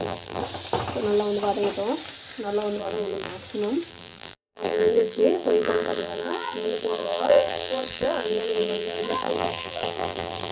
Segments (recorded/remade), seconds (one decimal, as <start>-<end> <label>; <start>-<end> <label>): 0.0-0.4 remade; 0.4-2.8 recorded; 2.8-3.3 remade; 3.3-3.9 recorded; 3.9-10.5 remade